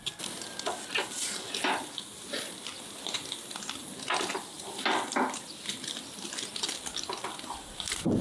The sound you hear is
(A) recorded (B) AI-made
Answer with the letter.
A